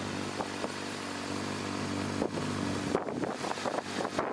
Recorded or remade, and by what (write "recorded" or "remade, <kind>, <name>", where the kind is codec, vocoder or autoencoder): recorded